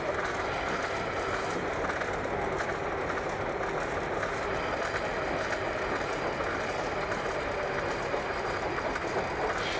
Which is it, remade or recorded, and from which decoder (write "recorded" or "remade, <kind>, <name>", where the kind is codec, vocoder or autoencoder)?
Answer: recorded